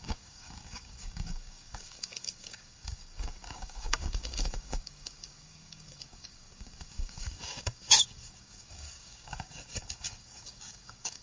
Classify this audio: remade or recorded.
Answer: remade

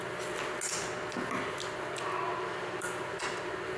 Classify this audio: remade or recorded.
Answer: recorded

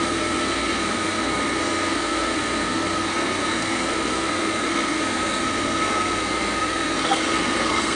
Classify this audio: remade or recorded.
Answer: remade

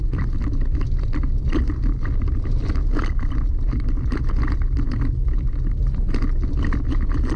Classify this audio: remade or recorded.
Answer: recorded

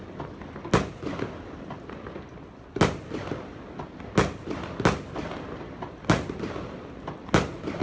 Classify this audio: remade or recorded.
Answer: recorded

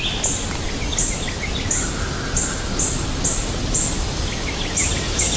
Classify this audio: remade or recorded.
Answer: recorded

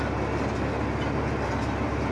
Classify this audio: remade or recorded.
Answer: recorded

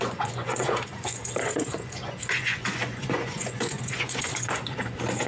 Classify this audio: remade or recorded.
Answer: remade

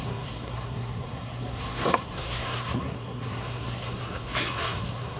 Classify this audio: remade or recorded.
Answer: remade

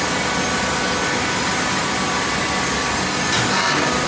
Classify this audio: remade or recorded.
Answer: recorded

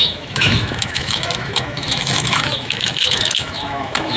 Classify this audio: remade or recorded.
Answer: remade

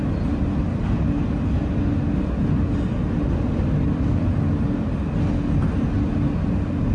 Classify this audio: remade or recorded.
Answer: recorded